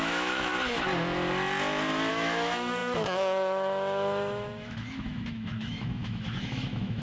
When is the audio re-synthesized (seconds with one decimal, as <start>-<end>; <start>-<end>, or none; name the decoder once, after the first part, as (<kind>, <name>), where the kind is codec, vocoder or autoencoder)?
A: 0.0-0.5 (autoencoder, DAC-VAE); 2.1-7.0